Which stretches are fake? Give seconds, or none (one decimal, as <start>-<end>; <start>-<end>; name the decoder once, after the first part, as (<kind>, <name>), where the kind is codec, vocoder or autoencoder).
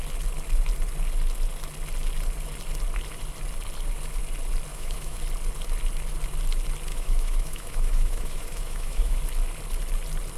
4.7-5.2 (autoencoder, DAC-VAE); 6.9-9.2